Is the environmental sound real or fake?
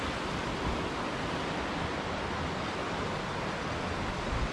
real